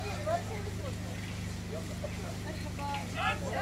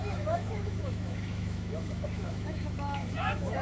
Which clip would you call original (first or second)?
first